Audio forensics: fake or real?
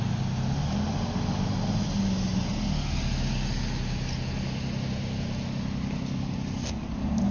real